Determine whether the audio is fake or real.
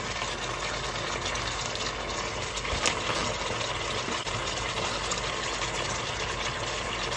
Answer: real